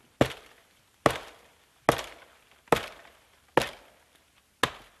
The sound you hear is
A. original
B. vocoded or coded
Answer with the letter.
A